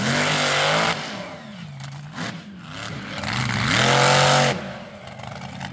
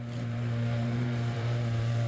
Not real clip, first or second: second